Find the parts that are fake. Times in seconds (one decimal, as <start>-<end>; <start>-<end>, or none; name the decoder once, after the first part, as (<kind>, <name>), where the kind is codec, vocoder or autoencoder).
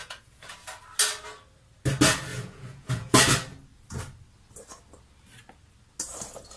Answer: 0.0-0.5 (vocoder, Vocos); 2.3-3.2